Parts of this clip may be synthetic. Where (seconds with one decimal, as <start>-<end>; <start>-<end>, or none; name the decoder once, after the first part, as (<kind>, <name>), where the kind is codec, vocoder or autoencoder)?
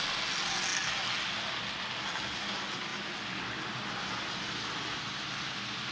none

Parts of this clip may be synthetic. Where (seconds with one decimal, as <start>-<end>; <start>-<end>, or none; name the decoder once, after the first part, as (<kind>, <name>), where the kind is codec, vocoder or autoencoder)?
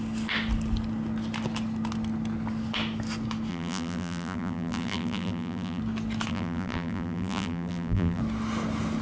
3.5-5.8 (vocoder, BigVGAN v2); 6.3-8.2